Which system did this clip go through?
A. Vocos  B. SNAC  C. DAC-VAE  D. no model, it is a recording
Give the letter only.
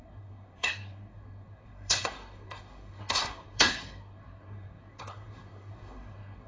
B